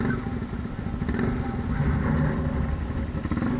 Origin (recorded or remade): recorded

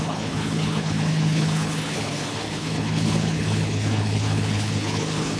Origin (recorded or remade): remade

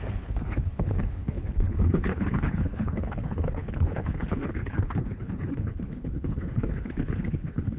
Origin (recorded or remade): remade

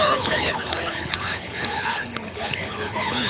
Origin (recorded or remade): remade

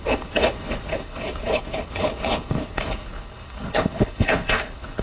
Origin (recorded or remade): remade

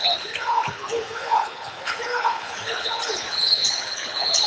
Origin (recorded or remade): remade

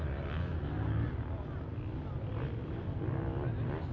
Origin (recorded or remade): recorded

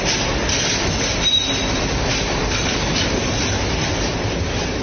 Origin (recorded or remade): recorded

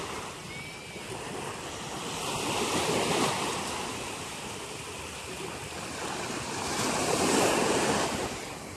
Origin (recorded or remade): recorded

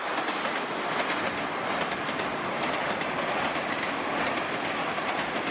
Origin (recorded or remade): recorded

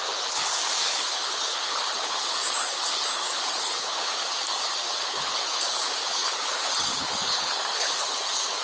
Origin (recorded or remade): remade